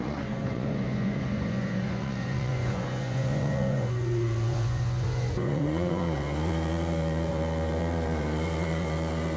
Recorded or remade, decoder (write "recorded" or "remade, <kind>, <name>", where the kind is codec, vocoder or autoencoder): remade, vocoder, Vocos